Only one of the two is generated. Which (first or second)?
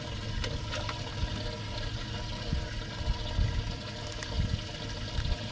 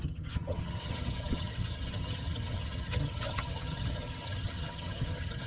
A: second